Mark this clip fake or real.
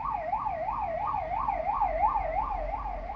fake